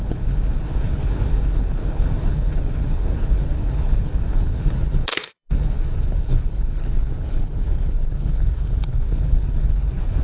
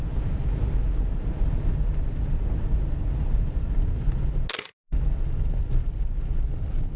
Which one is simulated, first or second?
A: first